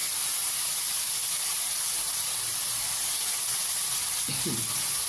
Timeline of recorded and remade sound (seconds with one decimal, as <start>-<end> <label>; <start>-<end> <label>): 0.0-3.6 recorded; 3.6-4.3 remade; 4.3-5.1 recorded

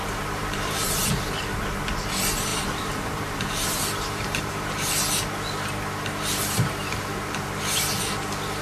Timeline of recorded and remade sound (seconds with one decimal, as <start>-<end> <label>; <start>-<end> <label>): 0.0-1.1 remade; 1.1-2.5 recorded; 2.5-4.9 remade; 4.9-6.3 recorded; 6.3-7.6 remade; 7.6-8.6 recorded